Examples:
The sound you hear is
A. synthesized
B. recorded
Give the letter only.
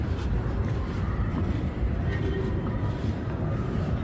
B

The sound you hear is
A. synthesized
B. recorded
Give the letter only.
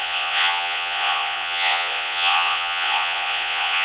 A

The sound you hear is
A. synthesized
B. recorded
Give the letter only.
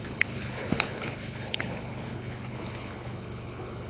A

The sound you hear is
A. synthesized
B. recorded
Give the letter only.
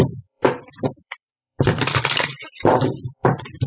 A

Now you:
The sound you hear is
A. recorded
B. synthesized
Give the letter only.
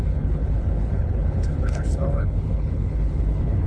B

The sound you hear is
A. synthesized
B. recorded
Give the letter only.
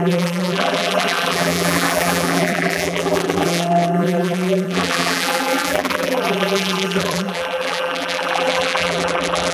A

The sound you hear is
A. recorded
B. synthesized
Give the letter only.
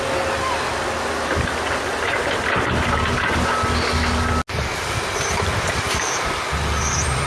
A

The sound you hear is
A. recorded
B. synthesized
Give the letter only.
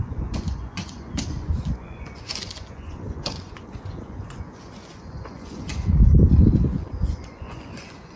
B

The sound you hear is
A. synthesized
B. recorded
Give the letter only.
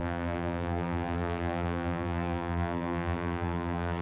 A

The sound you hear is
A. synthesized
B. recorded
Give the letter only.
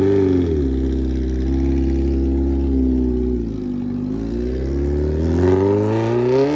B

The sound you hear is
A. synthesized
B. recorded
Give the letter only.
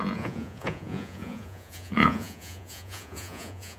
A